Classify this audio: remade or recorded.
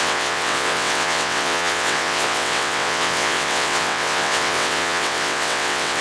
remade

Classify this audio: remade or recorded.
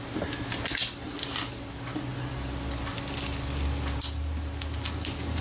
recorded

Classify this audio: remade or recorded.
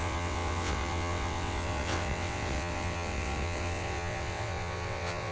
remade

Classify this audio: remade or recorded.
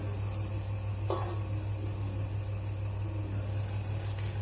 recorded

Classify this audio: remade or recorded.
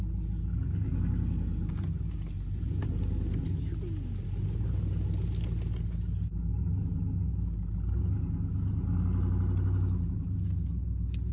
recorded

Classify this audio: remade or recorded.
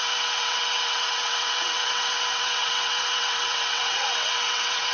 remade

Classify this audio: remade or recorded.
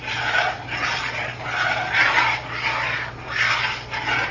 recorded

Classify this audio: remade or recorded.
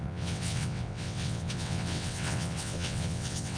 remade